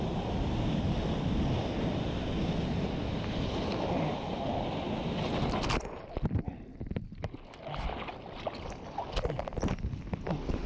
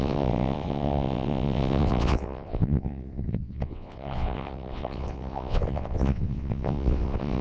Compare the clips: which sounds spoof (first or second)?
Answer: second